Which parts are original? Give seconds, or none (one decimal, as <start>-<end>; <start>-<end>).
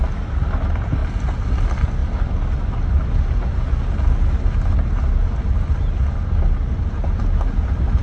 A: 0.0-8.0